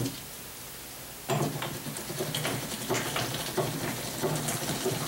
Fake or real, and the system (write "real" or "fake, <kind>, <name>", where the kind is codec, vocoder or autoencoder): real